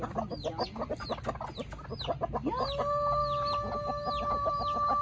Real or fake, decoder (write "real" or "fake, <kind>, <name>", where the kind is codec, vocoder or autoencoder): real